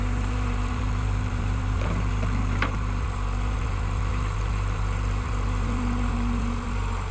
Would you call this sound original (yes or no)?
no